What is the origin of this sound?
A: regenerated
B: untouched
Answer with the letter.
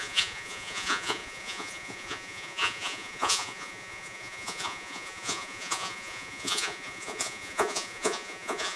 A